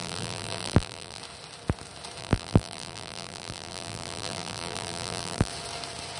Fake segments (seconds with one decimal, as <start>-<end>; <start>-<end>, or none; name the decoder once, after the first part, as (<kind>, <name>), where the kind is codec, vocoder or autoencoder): 0.0-1.2 (vocoder, BigVGAN v2); 2.2-5.5